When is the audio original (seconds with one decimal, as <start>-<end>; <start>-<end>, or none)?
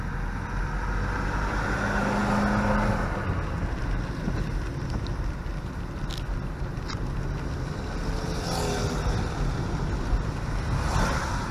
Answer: 0.0-11.5